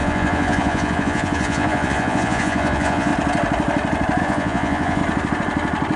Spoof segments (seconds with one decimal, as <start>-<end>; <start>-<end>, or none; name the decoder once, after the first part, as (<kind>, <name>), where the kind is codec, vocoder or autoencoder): 0.0-3.1 (vocoder, Vocos); 4.2-5.0